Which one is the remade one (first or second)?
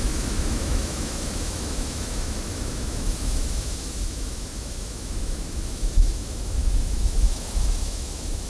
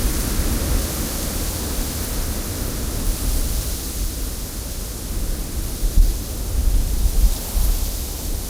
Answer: first